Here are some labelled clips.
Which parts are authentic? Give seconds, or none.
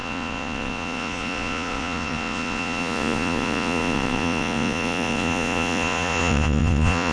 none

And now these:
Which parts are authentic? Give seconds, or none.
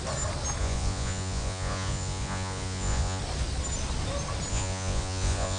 0.0-0.6; 3.2-4.5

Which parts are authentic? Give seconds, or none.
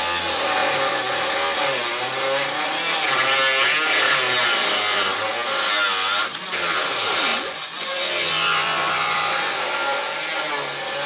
0.0-7.3; 9.6-11.1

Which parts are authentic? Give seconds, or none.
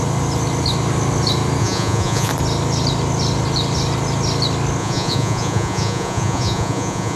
0.0-1.6; 2.3-4.8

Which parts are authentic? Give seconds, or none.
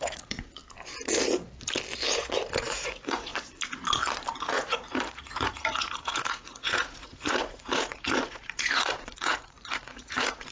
0.6-2.6; 3.3-4.4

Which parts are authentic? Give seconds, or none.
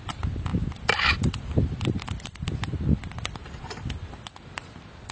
0.0-5.1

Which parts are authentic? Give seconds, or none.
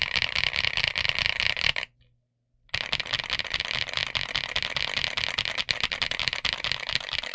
0.0-7.3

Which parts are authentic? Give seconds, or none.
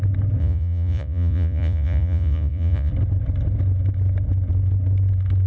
0.0-0.4; 2.9-5.5